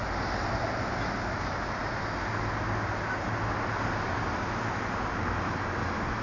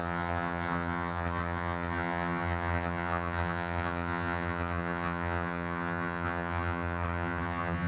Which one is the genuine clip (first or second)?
first